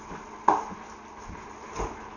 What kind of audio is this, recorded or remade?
recorded